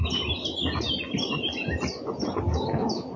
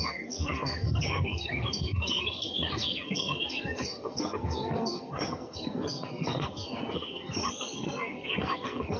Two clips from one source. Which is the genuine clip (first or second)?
first